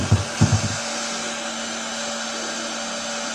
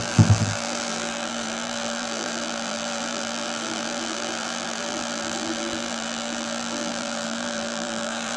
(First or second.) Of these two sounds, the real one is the first